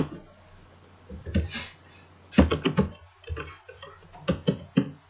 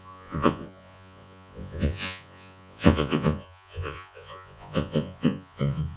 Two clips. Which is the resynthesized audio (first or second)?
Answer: second